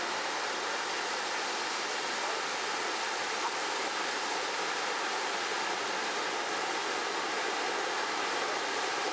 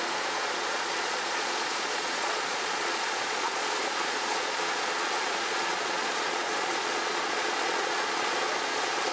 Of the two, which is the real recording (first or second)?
first